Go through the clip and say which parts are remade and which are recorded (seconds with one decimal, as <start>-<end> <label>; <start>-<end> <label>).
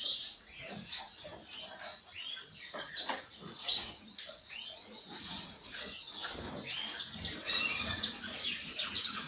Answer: 0.0-1.3 remade; 1.3-2.0 recorded; 2.0-6.2 remade; 6.2-7.4 recorded; 7.4-9.3 remade